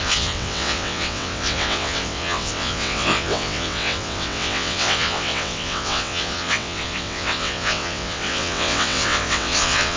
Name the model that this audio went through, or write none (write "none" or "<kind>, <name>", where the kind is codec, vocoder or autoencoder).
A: vocoder, WaveNeXt